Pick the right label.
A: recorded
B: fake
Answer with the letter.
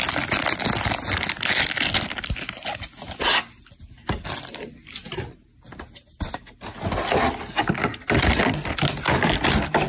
A